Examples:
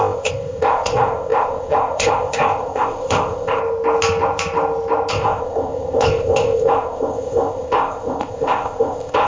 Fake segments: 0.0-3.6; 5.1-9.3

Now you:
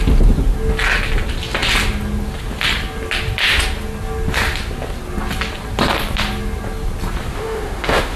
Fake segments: 7.3-8.2